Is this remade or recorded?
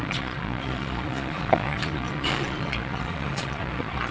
remade